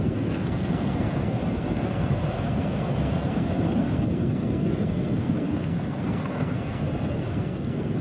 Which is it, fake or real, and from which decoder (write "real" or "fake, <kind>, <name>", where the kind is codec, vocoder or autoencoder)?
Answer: fake, codec, SNAC